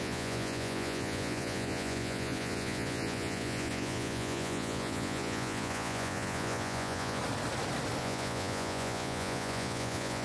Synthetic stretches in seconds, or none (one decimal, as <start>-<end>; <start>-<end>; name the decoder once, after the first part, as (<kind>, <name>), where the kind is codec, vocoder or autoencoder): 0.0-7.2 (vocoder, Vocos); 8.0-10.2

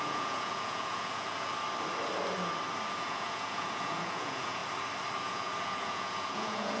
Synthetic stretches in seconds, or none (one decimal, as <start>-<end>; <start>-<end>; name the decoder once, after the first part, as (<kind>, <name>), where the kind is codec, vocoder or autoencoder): 0.0-1.5 (vocoder, Vocos); 2.9-4.6; 5.2-6.8

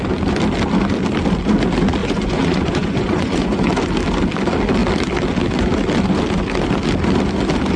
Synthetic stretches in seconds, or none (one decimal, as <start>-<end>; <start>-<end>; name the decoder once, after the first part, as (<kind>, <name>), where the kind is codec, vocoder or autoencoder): 2.0-3.7 (vocoder, Vocos)

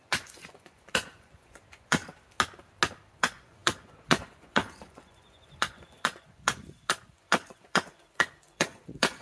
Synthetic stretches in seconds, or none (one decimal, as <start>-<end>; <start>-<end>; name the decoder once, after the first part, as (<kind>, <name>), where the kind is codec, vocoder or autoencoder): 0.0-2.0 (vocoder, Vocos); 3.1-9.2